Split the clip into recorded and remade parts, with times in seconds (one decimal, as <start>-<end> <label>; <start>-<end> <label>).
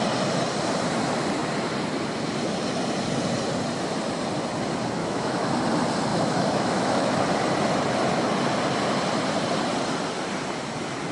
0.0-5.0 recorded; 5.0-5.5 remade; 5.5-6.1 recorded; 6.1-7.2 remade; 7.2-11.1 recorded